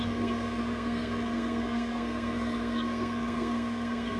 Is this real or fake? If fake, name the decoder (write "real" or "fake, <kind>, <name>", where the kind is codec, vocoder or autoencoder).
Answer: fake, codec, SNAC